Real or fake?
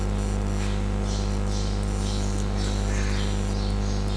real